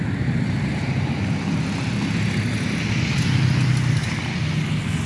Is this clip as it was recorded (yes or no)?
yes